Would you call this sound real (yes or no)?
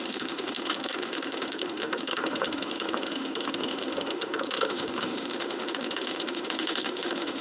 no